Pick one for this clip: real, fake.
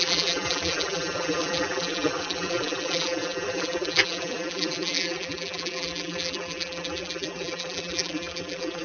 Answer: fake